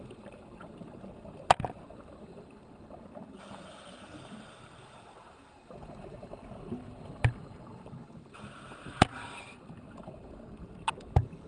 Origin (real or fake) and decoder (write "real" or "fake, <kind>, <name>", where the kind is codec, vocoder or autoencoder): real